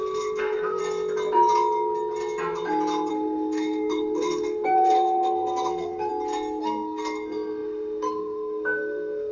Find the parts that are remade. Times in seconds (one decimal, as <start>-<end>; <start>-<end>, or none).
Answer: 0.0-0.8; 3.1-6.1; 6.6-9.3